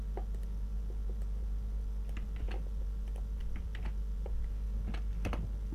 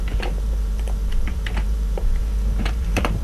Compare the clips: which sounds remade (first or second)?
second